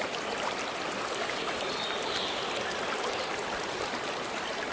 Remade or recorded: recorded